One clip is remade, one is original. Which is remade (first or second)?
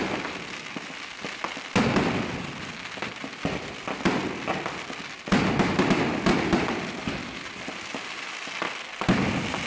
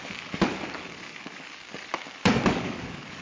second